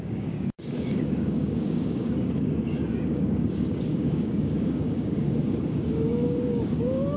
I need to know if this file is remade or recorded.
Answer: remade